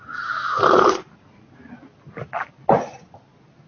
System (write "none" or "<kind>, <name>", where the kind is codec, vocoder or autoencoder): none